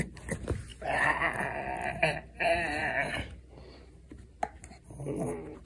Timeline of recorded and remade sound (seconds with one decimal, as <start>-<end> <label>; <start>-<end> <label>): 0.0-0.7 recorded; 0.7-1.4 remade; 1.4-2.8 recorded; 2.8-5.7 remade